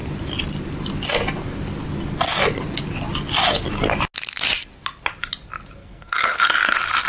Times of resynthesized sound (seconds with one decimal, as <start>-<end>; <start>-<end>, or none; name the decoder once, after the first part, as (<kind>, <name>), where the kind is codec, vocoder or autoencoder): 5.8-6.4 (codec, SNAC)